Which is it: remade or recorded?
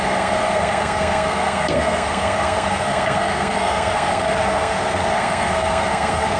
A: remade